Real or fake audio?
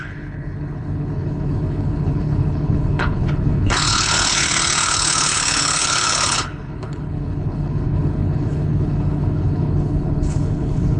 fake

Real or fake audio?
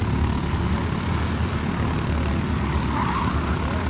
real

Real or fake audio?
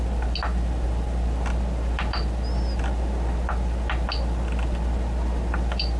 real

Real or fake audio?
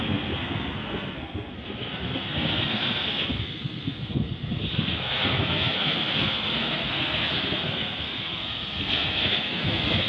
fake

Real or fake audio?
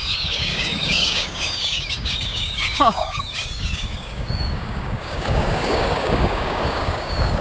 fake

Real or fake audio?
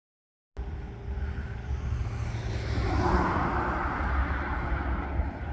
real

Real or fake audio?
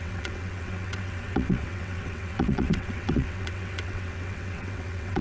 fake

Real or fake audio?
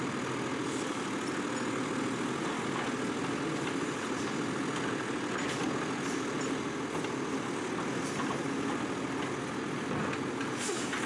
real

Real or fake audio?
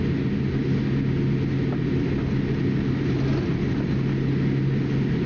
real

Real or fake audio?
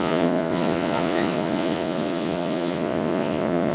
fake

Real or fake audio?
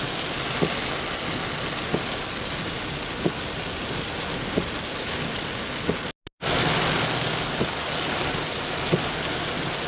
real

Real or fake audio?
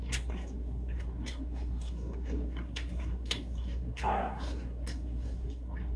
fake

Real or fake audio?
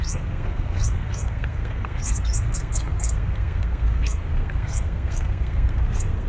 fake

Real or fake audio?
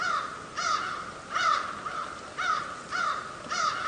real